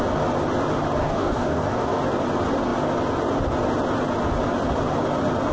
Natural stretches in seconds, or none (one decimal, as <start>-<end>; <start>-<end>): 0.0-1.0; 2.0-5.5